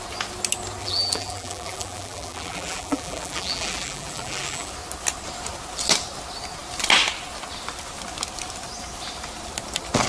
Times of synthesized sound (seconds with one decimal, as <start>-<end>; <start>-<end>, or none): 0.8-4.7